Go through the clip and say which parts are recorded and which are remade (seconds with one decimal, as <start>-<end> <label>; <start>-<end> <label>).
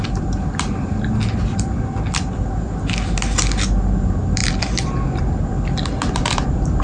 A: 0.0-6.8 recorded